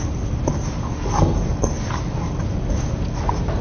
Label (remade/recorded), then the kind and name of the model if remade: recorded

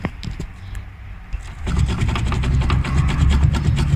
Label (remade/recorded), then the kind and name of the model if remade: recorded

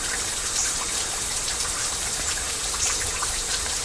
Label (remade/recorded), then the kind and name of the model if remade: remade, vocoder, BigVGAN v2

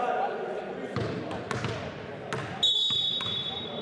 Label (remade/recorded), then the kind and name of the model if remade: recorded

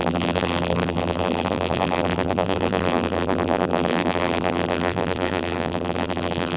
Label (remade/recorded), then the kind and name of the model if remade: remade, vocoder, BigVGAN v2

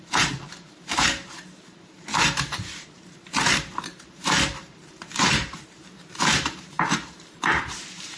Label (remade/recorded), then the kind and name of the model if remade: remade, vocoder, BigVGAN v2